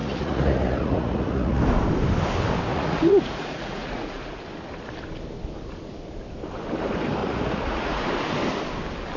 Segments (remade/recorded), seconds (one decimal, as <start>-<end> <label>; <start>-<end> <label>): 0.0-1.6 remade; 1.6-2.7 recorded; 2.7-4.4 remade; 4.4-7.2 recorded; 7.2-8.1 remade; 8.1-9.2 recorded